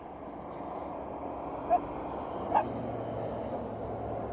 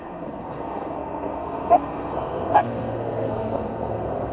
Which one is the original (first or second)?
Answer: first